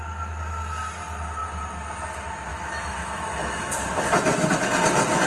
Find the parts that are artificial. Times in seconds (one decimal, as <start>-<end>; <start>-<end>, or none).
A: 2.5-3.7